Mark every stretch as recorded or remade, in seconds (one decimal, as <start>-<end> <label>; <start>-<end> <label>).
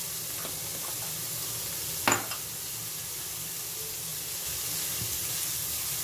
0.0-6.0 recorded